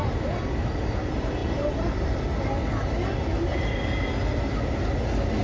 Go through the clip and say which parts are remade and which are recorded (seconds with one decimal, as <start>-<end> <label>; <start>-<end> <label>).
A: 0.0-1.4 recorded; 1.4-2.2 remade; 2.2-5.4 recorded